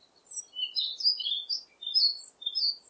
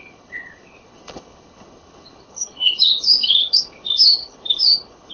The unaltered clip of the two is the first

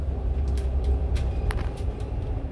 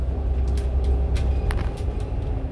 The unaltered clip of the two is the second